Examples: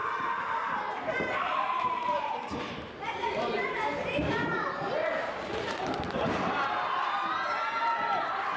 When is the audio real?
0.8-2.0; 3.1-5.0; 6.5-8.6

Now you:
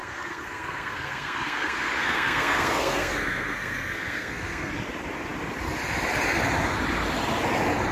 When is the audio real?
4.7-7.9

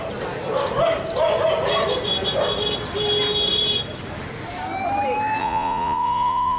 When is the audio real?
0.0-5.4

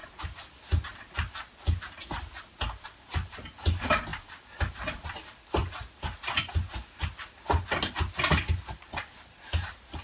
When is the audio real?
0.0-10.0

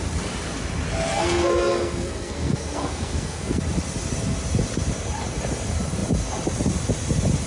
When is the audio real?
0.0-1.1; 3.6-7.5

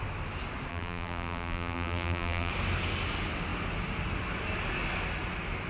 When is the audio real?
0.0-0.7; 2.5-5.7